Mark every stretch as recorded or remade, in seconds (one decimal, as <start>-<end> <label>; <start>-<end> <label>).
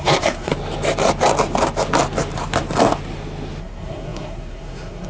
0.0-0.5 remade; 0.5-3.6 recorded; 3.6-5.1 remade